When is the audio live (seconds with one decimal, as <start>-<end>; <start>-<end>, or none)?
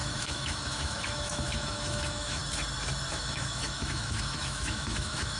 2.4-3.1